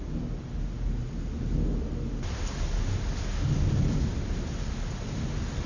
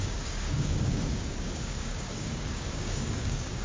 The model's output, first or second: second